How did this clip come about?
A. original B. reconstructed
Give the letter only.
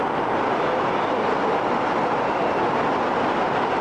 A